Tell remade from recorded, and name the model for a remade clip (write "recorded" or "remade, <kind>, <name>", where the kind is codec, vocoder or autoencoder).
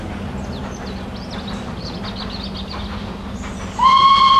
recorded